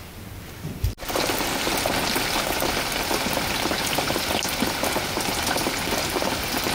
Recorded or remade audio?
recorded